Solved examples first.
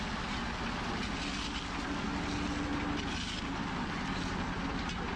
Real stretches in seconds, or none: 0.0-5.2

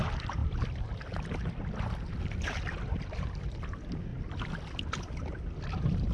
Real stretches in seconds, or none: 0.0-6.1

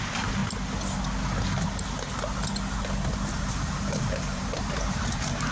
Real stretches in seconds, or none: 0.4-3.4

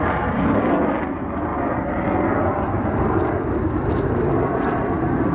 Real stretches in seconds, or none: 0.0-5.3

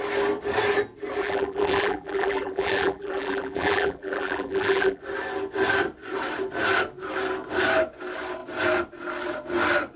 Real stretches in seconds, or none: 0.0-1.2; 5.0-10.0